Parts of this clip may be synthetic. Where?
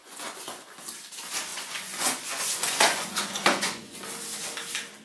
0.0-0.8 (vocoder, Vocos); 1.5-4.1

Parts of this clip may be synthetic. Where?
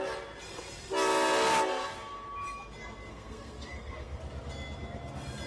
3.1-4.2 (codec, SNAC)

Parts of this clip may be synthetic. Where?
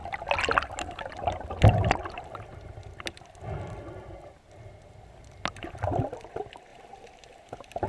none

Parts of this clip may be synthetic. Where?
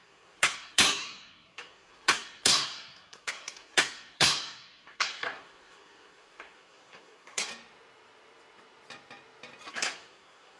0.0-7.5 (codec, SNAC); 9.7-10.6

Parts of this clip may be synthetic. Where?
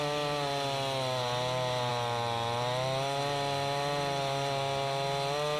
none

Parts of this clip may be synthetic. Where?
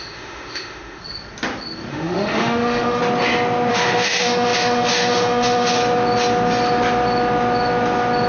0.0-1.0 (autoencoder, DAC-VAE); 1.9-3.0; 3.7-5.8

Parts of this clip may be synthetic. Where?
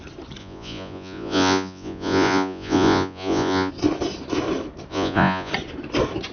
0.4-3.7 (vocoder, Vocos); 4.9-5.5